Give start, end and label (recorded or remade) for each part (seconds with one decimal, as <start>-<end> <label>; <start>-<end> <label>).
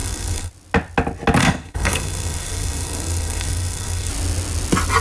0.0-0.5 remade; 0.5-1.4 recorded; 1.4-4.1 remade; 4.1-5.0 recorded